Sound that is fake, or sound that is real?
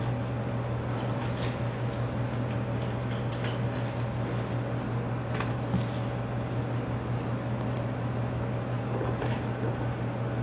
real